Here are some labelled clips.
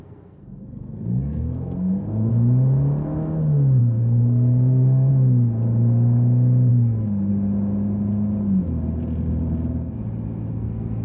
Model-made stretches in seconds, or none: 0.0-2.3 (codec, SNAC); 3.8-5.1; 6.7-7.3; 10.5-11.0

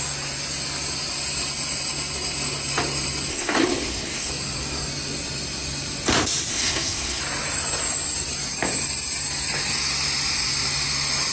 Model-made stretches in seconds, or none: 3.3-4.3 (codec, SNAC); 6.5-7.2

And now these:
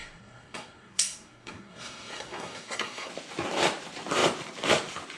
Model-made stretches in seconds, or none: 0.0-3.1 (codec, SNAC)

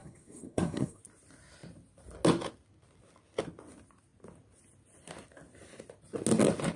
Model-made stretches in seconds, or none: 0.0-1.0 (codec, SNAC)

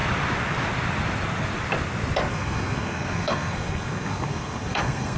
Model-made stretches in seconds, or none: 2.3-5.2 (codec, SNAC)

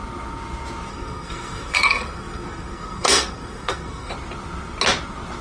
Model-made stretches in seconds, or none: 0.9-4.1 (codec, SNAC)